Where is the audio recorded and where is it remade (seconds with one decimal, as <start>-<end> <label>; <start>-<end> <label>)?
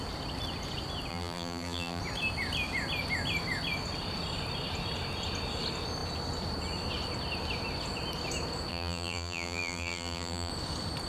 0.0-1.1 recorded; 1.1-2.0 remade; 2.0-8.7 recorded; 8.7-10.5 remade; 10.5-11.1 recorded